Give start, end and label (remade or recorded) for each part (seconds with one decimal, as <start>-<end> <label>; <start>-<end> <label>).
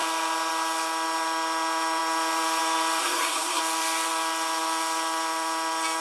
0.0-3.0 recorded; 3.0-3.6 remade; 3.6-6.0 recorded